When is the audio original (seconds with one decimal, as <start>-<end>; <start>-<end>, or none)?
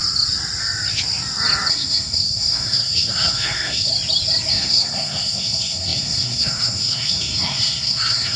0.0-1.7; 3.9-4.5